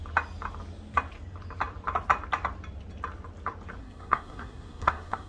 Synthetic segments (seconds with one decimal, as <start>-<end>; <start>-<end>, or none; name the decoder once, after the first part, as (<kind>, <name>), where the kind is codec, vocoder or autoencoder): 3.8-5.3 (codec, SNAC)